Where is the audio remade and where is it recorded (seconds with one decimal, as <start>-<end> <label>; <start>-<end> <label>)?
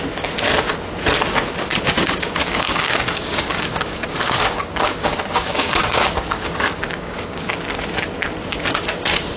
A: 0.0-2.4 recorded; 2.4-7.5 remade; 7.5-9.4 recorded